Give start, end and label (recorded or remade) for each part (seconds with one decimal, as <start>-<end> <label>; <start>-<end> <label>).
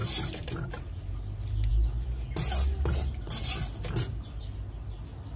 0.0-5.4 recorded